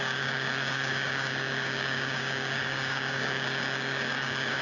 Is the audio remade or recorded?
remade